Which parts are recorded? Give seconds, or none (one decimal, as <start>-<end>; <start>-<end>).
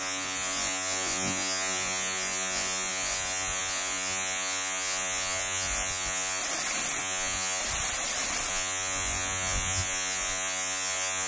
6.4-7.0; 7.6-8.5